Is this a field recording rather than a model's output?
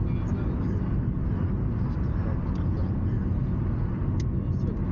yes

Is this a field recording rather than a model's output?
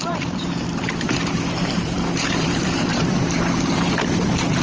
no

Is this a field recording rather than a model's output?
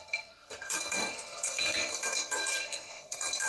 no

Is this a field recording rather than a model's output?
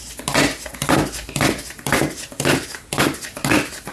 yes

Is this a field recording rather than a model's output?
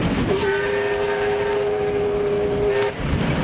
yes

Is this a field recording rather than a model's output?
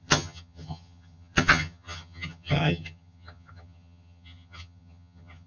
no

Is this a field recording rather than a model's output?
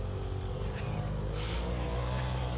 yes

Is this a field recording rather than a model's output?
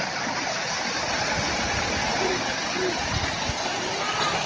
yes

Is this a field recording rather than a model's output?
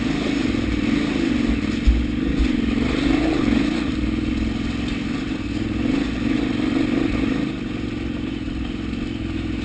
yes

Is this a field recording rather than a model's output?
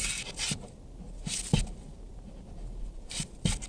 yes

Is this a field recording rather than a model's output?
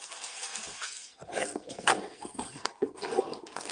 no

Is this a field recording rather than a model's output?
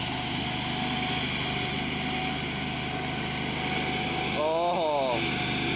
yes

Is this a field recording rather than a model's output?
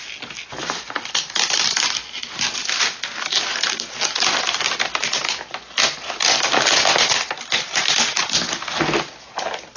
yes